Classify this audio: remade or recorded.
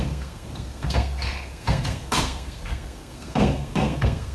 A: remade